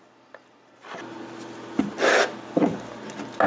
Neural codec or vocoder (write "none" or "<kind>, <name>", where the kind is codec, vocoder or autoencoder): none